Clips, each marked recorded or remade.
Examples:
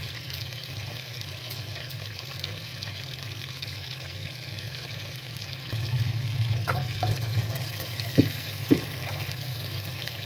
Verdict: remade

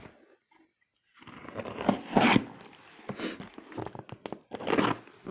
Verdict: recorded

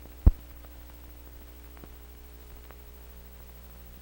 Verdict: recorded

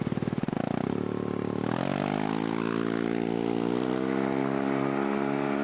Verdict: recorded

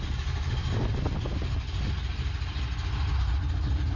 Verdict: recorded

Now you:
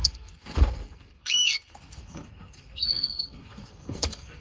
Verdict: remade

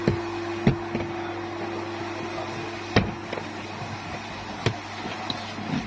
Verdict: recorded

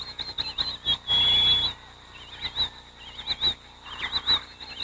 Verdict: recorded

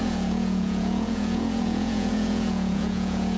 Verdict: remade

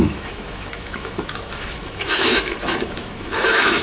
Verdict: remade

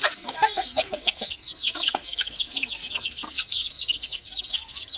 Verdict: remade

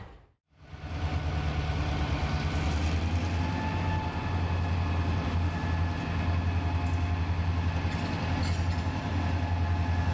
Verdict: recorded